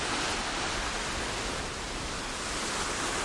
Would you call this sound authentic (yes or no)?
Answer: yes